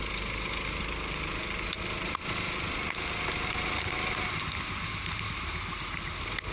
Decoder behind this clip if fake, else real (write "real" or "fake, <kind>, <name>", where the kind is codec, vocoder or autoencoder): real